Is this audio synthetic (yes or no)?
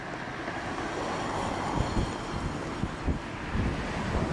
no